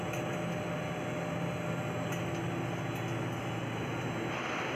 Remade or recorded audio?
recorded